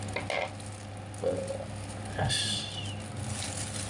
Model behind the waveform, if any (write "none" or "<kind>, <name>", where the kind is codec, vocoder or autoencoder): none